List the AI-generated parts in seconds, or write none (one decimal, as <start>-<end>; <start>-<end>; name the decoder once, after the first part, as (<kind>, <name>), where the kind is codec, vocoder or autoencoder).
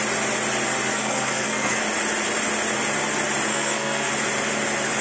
0.9-1.8 (codec, SNAC); 3.5-4.1